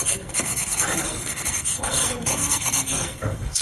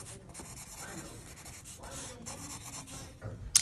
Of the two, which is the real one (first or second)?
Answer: second